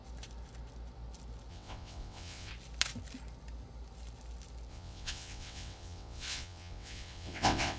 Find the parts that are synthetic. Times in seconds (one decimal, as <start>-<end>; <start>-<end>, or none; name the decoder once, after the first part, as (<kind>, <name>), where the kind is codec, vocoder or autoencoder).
1.5-2.5 (vocoder, WaveNeXt); 4.7-7.8